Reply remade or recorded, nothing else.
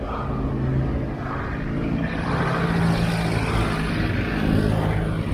recorded